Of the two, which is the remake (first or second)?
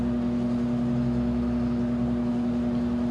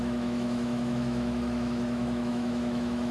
second